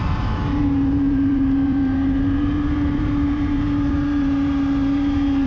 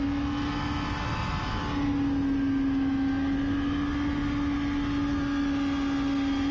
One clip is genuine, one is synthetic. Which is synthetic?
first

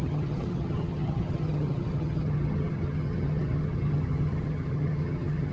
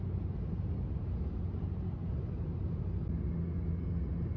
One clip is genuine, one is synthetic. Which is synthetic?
first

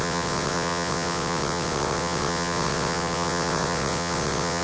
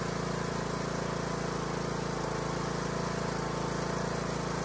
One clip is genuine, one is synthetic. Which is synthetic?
first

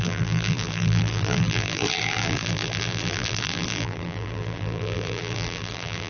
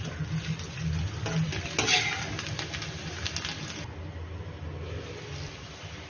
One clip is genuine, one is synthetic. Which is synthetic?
first